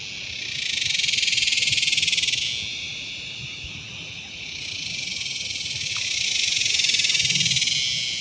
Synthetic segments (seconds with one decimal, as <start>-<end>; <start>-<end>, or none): 2.7-6.7